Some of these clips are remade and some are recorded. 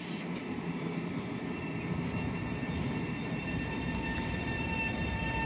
remade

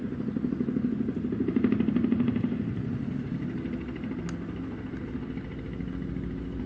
recorded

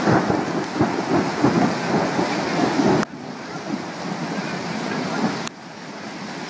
recorded